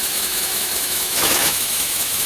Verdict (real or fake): fake